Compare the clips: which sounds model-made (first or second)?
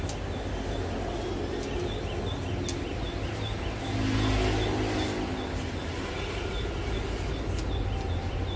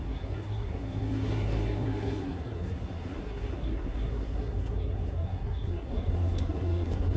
second